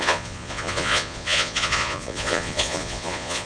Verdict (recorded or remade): remade